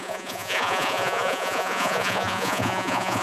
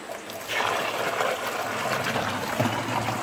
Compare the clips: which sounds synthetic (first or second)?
first